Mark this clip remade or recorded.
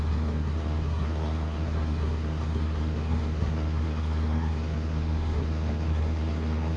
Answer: remade